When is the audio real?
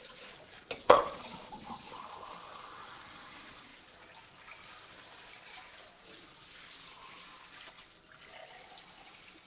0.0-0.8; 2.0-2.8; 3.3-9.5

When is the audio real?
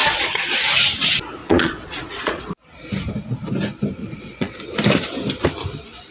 0.6-1.4; 2.4-4.0; 4.6-6.1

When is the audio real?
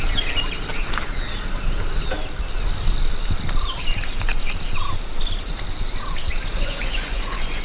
0.0-6.5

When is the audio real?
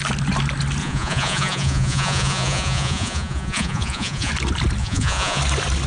0.0-0.8; 4.3-4.8; 5.4-5.9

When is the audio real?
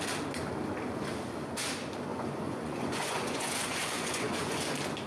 0.0-2.1; 4.6-5.1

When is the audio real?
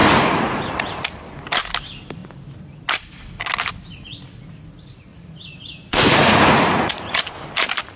0.6-5.1; 7.2-8.0